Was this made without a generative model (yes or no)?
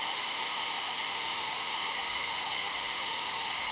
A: no